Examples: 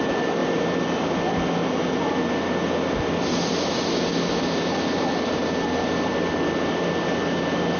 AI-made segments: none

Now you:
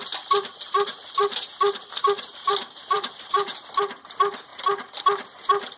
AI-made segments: 0.5-3.8 (vocoder, BigVGAN v2); 4.5-5.0

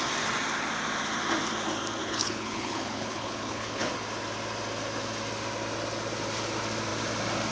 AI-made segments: 2.0-3.9 (codec, HILCodec)

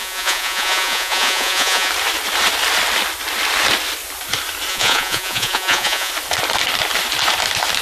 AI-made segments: 0.0-1.9 (vocoder, Vocos); 4.7-6.1

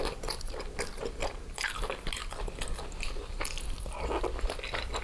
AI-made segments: none

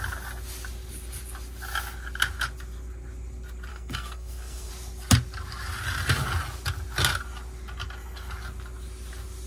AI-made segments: 3.7-4.7 (codec, SNAC)

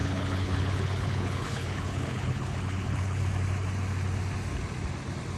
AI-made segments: 0.0-3.2 (codec, HILCodec)

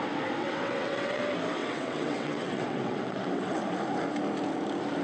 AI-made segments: 0.4-1.2 (vocoder, WaveNeXt); 1.6-3.6